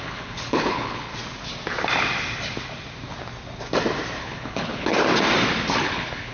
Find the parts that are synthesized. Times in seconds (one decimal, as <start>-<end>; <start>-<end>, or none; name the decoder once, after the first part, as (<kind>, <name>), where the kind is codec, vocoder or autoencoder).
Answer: 0.0-1.1 (codec, HILCodec); 4.2-4.9; 5.8-6.3